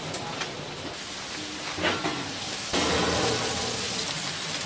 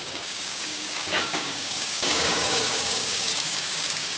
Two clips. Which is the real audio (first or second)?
first